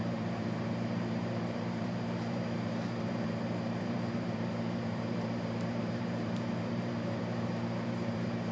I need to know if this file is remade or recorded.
remade